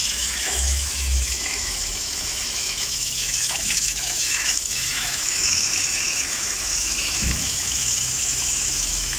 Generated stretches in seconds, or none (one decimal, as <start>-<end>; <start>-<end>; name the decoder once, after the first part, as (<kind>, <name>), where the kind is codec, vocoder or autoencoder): 0.0-9.2 (autoencoder, DAC-VAE)

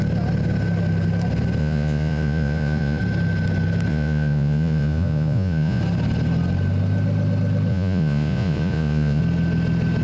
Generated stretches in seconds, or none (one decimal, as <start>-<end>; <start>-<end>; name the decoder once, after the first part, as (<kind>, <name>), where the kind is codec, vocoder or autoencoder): 1.6-3.0 (vocoder, Vocos); 3.9-5.8; 7.7-9.2

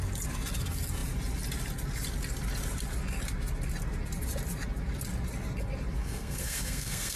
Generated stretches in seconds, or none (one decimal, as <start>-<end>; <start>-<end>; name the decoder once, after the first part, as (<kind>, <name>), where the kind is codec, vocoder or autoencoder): 6.0-7.2 (codec, SNAC)

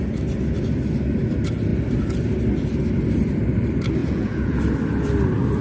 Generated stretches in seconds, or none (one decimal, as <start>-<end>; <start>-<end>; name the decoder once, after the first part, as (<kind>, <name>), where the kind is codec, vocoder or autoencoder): 4.0-4.6 (vocoder, Vocos)

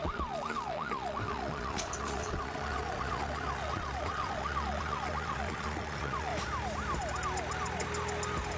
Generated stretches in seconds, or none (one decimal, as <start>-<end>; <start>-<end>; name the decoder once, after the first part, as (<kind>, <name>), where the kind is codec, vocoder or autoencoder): 0.0-6.3 (vocoder, WaveNeXt)

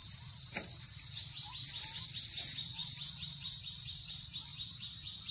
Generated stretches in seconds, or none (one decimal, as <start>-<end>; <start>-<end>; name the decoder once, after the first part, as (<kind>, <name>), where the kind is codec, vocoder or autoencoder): 0.0-1.5 (vocoder, BigVGAN v2); 2.8-4.1; 4.5-5.3